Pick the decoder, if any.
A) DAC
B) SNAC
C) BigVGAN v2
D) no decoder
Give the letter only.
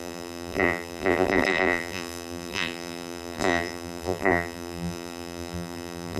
C